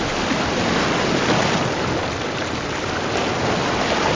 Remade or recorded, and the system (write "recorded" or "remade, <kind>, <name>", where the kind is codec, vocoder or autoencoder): recorded